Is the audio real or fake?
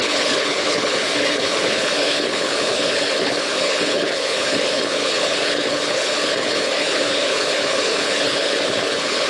fake